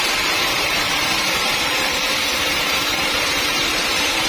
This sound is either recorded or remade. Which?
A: remade